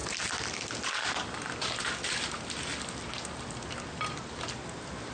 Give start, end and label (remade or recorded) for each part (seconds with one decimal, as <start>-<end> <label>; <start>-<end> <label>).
0.0-5.1 recorded